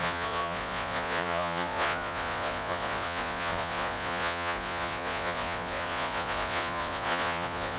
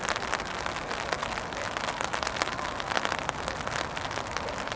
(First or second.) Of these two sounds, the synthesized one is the first